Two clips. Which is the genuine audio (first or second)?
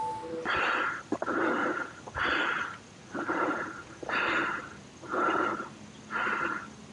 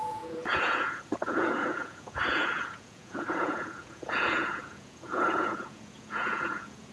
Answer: first